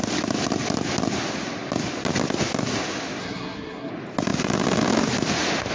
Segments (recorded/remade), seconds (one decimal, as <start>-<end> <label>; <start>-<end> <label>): 0.0-3.2 recorded; 3.2-3.9 remade; 3.9-5.7 recorded